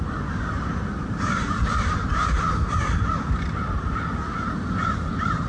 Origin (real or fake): fake